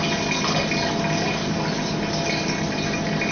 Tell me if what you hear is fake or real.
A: real